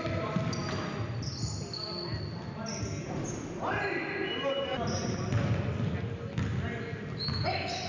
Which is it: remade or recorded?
recorded